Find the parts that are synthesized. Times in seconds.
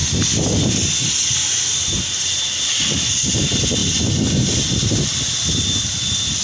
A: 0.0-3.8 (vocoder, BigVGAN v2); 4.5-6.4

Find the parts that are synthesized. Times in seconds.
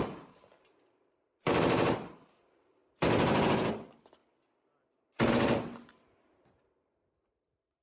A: 0.0-2.8 (vocoder, BigVGAN v2); 3.7-4.2; 5.3-7.8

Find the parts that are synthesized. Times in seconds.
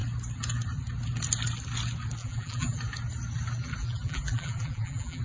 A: 2.2-2.8 (vocoder, BigVGAN v2); 3.8-5.2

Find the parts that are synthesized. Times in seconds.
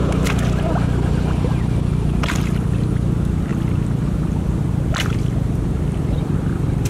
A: 3.5-4.6 (vocoder, BigVGAN v2)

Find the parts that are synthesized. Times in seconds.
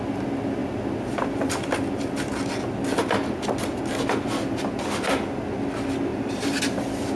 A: 6.1-6.6 (vocoder, BigVGAN v2)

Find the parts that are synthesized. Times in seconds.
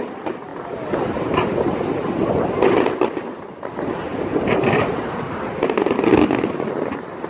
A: 4.1-6.1 (vocoder, BigVGAN v2)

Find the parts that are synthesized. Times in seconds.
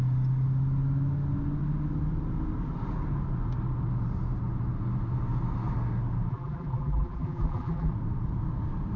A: 6.3-7.9 (vocoder, BigVGAN v2)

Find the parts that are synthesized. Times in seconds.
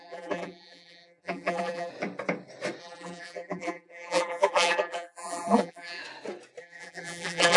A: 0.0-1.9 (vocoder, BigVGAN v2); 2.8-6.0; 6.6-7.6